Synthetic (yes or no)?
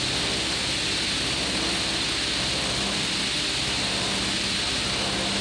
no